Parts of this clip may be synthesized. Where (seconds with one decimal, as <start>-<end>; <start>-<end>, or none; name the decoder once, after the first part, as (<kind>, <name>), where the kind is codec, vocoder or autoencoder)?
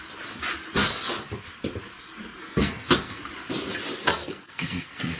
2.4-3.2 (codec, SNAC); 4.0-5.2